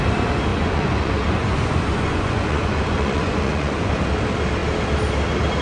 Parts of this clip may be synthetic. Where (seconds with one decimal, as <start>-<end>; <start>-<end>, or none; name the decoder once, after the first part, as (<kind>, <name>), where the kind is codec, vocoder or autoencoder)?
0.5-3.9 (vocoder, Vocos)